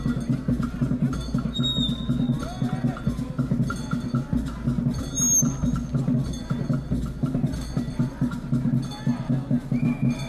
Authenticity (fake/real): real